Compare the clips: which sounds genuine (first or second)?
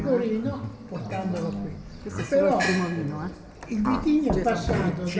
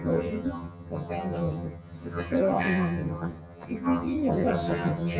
first